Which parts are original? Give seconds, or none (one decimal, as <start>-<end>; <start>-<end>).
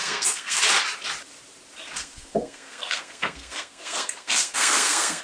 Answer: 0.6-2.0